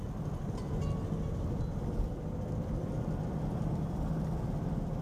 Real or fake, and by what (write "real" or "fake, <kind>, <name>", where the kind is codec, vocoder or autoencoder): real